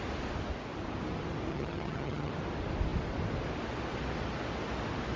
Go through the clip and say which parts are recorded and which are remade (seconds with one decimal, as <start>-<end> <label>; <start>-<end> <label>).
0.0-1.5 recorded; 1.5-2.3 remade; 2.3-5.2 recorded